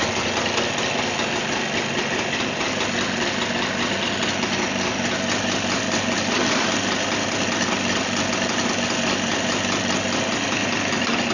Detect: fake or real real